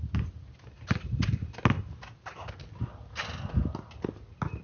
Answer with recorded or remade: recorded